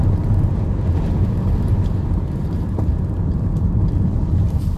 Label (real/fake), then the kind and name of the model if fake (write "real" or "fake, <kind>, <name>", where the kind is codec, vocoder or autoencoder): fake, vocoder, BigVGAN v2